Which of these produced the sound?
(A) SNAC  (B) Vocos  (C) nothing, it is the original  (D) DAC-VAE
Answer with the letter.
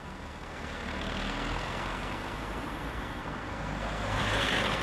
A